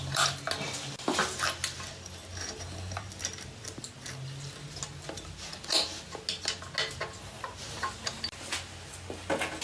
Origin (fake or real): real